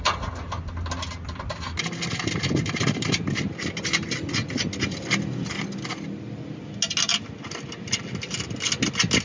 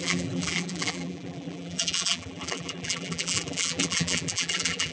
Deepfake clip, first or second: second